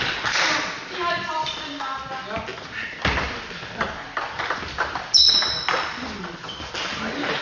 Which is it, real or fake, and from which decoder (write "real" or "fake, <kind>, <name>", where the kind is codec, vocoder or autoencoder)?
real